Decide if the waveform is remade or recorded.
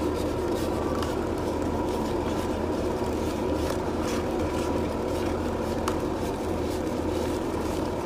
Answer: remade